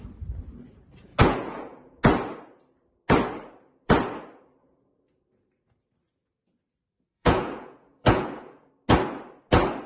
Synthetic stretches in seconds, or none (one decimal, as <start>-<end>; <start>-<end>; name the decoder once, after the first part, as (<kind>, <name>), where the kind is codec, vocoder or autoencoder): 1.1-2.0 (vocoder, Vocos); 4.6-8.7